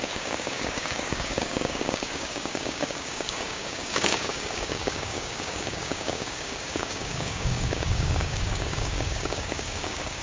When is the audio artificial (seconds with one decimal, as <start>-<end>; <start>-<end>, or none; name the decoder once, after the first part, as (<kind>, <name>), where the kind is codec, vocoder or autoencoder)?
0.0-10.2 (codec, DAC)